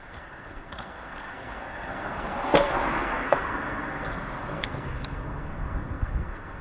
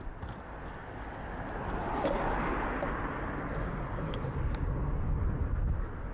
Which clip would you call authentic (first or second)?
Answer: second